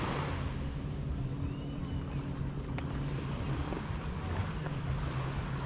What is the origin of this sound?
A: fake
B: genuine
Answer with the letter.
B